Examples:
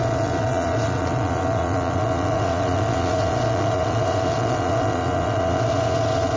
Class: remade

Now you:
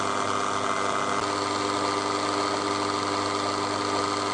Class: recorded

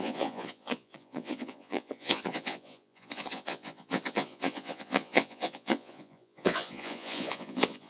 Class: remade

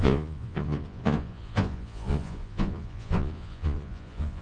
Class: remade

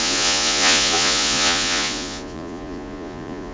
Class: remade